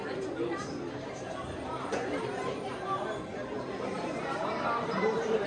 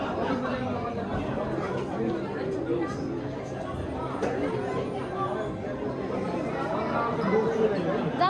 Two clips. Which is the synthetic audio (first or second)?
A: first